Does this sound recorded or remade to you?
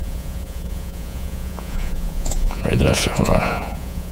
remade